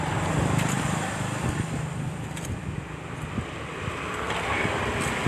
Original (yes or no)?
no